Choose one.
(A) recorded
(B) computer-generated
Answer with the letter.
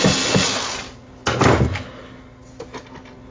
A